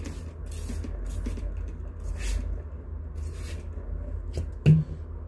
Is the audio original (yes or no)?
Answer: yes